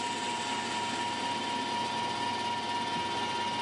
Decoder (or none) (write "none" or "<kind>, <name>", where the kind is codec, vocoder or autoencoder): none